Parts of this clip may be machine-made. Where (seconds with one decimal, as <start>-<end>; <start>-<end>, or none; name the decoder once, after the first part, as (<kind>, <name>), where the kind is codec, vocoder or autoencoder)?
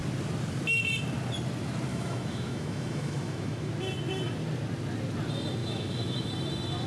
1.9-3.7 (autoencoder, DAC-VAE); 5.6-6.3